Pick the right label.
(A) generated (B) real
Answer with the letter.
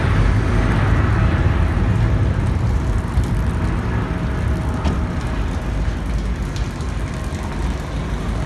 B